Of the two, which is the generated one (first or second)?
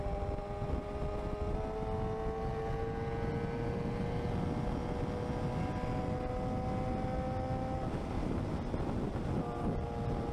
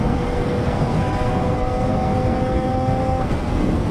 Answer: second